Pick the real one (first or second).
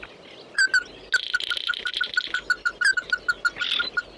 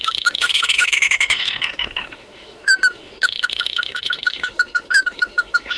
first